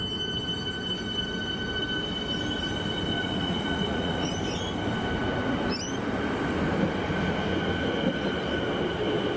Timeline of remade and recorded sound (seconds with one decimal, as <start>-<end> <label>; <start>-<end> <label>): 0.0-3.2 recorded; 3.2-4.3 remade; 4.3-9.4 recorded